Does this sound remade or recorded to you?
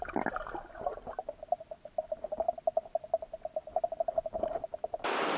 recorded